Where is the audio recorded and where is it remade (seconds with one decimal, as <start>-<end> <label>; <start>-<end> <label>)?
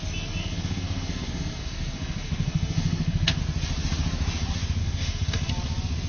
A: 0.0-0.4 recorded; 0.4-3.4 remade; 3.4-4.8 recorded; 4.8-5.5 remade; 5.5-6.1 recorded